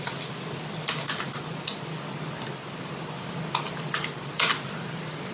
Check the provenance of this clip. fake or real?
real